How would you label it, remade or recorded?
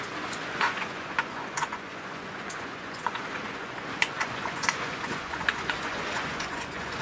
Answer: remade